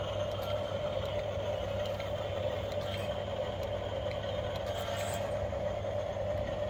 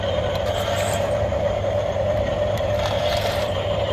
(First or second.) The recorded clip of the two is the first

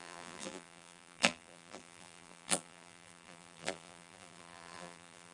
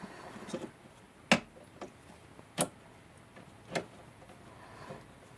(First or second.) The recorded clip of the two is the second